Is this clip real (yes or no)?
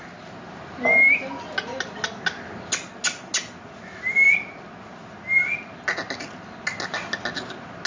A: yes